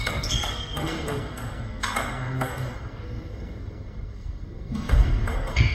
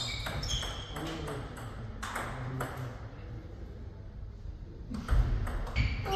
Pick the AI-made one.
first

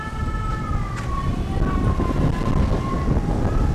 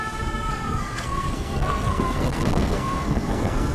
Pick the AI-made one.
second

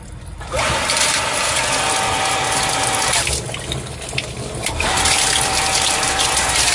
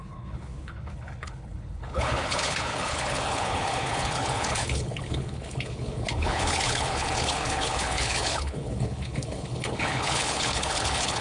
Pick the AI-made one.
second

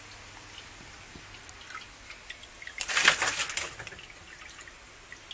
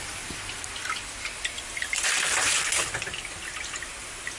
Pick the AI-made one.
second